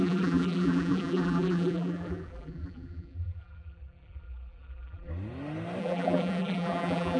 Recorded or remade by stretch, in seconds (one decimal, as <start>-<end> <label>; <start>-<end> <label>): 0.0-5.1 remade; 5.1-5.8 recorded; 5.8-7.2 remade